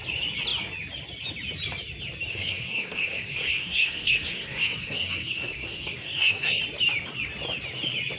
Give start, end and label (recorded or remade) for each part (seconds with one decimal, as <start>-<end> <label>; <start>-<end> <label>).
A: 0.0-2.3 recorded; 2.3-6.6 remade; 6.6-8.2 recorded